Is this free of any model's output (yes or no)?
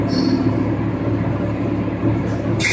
yes